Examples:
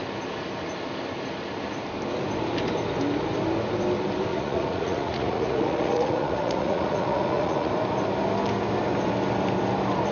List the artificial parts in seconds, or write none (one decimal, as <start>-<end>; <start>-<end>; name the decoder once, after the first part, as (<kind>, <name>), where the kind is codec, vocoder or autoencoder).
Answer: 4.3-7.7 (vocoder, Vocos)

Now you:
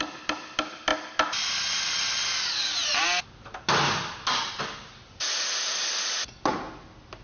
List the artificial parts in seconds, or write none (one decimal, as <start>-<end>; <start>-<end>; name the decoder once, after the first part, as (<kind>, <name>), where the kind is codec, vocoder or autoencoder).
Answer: none

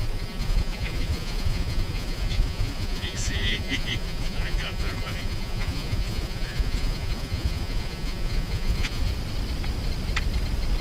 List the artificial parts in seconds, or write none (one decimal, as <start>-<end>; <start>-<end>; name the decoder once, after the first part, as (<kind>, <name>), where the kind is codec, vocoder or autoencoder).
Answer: 0.0-9.1 (vocoder, Vocos)

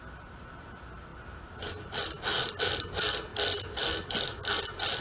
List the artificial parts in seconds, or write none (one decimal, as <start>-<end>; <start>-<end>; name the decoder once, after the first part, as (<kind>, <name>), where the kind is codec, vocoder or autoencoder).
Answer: none

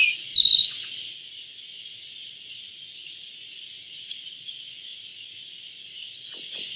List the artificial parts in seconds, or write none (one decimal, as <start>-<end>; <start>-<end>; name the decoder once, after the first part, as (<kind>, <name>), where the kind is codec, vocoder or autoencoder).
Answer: none

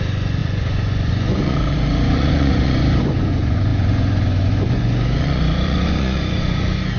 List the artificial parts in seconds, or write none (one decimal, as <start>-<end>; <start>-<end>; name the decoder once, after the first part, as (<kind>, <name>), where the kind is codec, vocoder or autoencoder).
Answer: 0.0-7.0 (vocoder, Vocos)